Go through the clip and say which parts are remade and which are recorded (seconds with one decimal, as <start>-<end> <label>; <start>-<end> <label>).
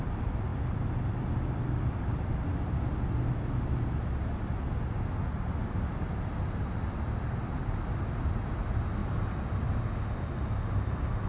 0.0-11.3 recorded